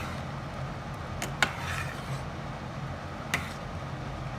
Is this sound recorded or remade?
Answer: recorded